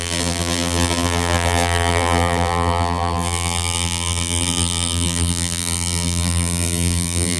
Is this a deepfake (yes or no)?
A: yes